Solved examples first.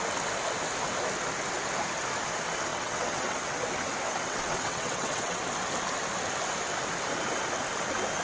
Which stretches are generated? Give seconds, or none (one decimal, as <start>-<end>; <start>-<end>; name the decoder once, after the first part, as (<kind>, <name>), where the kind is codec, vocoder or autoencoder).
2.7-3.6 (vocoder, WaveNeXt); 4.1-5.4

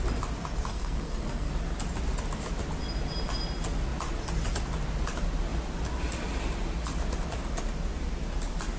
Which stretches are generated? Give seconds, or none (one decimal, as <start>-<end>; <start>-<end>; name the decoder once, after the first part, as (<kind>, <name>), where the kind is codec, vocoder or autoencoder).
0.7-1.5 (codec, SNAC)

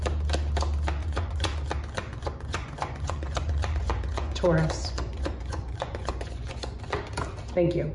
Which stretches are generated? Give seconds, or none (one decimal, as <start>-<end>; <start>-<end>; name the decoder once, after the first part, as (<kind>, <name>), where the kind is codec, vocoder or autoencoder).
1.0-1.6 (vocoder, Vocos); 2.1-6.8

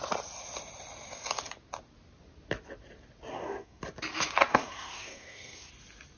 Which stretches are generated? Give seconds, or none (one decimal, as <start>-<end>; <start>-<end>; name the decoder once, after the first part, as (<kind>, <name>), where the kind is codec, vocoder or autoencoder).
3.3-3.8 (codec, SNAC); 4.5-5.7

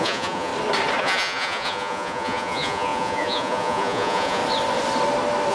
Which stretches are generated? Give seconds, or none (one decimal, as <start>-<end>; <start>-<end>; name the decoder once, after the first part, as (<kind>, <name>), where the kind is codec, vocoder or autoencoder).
0.0-0.5 (vocoder, Vocos); 1.0-4.4

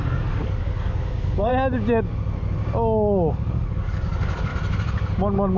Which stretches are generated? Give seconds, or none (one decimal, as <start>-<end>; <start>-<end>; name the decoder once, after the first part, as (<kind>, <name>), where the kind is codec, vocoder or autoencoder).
0.0-1.5 (codec, DAC); 3.3-4.5

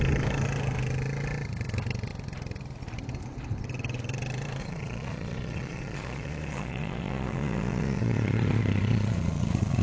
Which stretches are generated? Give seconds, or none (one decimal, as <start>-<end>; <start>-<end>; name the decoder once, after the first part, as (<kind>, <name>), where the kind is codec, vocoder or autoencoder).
4.6-9.8 (vocoder, Vocos)

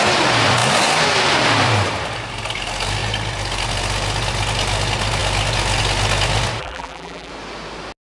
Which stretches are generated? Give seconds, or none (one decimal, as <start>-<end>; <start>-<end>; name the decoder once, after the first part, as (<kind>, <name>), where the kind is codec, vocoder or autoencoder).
6.6-7.3 (vocoder, BigVGAN v2)